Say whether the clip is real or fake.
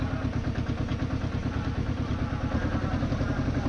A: real